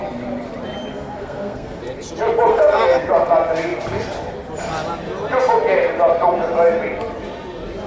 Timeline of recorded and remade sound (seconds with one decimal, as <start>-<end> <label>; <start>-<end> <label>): 0.0-0.9 recorded; 0.9-1.8 remade; 1.8-2.5 recorded; 2.5-3.1 remade; 3.1-7.9 recorded